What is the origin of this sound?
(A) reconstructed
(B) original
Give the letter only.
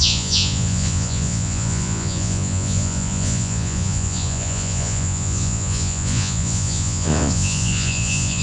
A